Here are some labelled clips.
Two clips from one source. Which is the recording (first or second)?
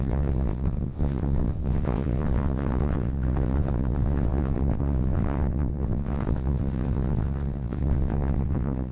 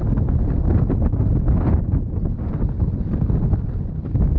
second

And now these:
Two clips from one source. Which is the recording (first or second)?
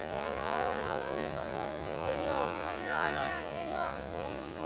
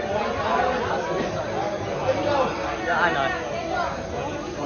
second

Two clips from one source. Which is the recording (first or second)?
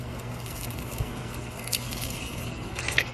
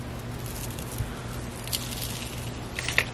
second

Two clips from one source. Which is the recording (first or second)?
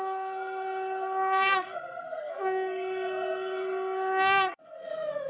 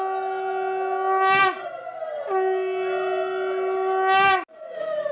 second